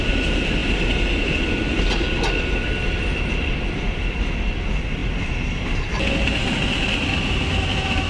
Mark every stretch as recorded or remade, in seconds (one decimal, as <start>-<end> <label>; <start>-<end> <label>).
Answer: 0.0-8.1 recorded